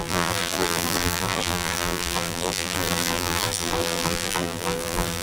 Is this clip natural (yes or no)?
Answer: no